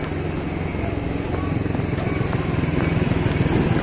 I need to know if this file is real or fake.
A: real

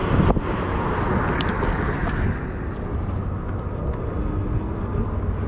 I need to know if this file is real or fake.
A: real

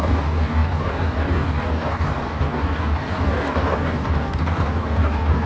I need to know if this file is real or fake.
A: fake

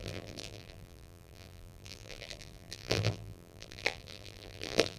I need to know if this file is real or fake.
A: fake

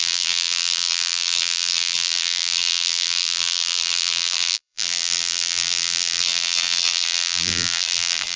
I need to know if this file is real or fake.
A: fake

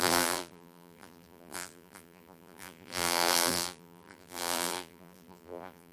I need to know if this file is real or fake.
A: fake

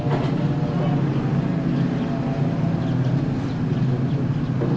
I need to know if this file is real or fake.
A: real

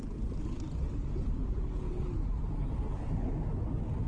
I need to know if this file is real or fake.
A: real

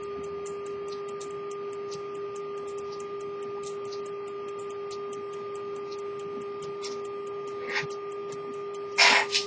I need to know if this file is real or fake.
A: real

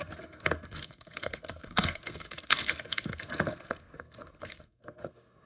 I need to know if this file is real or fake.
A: fake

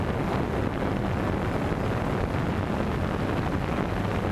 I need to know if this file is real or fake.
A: real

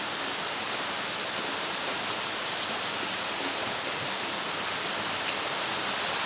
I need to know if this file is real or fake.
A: real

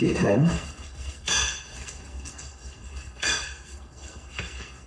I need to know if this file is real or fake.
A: fake